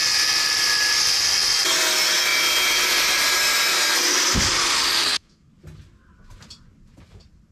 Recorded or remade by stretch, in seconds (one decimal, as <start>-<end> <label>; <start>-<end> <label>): 0.0-5.0 recorded; 5.0-5.5 remade; 5.5-7.5 recorded